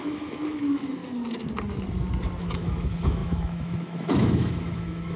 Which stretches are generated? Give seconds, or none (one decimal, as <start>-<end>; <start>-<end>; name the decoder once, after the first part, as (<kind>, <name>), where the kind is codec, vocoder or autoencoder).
0.0-1.0 (autoencoder, DAC-VAE); 2.4-5.2

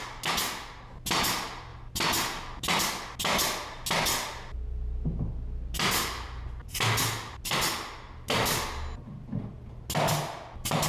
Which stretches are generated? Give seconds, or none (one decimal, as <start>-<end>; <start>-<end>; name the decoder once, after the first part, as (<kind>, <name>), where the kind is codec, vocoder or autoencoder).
none

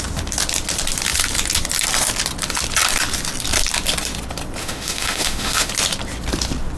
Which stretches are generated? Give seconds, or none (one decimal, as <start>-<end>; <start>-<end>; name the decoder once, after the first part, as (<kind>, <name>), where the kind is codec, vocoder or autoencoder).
4.6-5.7 (autoencoder, DAC-VAE)

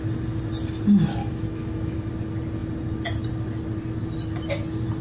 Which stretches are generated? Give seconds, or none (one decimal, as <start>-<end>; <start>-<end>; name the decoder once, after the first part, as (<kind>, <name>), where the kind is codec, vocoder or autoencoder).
1.2-2.1 (autoencoder, DAC-VAE)

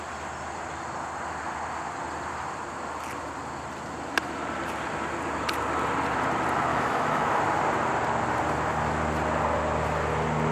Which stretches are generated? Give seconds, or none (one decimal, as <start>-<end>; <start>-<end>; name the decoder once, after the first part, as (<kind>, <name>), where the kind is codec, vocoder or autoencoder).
6.7-7.4 (autoencoder, DAC-VAE)

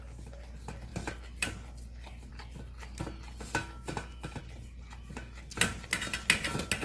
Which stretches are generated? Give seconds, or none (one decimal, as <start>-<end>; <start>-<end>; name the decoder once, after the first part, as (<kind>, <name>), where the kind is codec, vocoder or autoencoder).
3.6-4.4 (autoencoder, DAC-VAE)